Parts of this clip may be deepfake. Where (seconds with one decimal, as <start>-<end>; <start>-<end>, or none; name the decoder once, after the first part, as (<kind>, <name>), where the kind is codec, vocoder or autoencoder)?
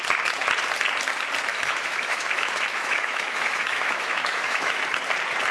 1.5-4.8 (autoencoder, DAC-VAE)